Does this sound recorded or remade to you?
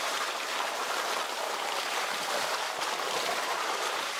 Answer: remade